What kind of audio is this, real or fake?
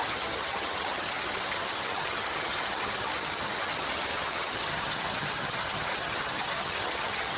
fake